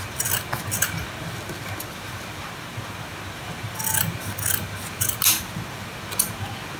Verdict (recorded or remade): recorded